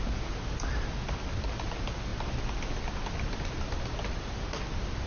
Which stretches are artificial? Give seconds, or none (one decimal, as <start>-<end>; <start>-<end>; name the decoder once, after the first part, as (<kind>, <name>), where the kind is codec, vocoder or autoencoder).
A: none